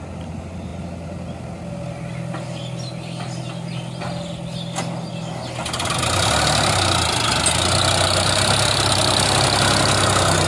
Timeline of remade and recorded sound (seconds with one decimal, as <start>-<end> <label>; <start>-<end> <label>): 0.0-10.5 recorded